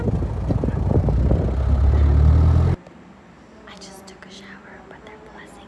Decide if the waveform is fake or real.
real